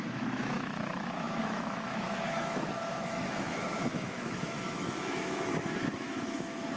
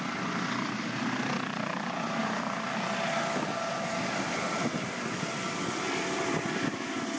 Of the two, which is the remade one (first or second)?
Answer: first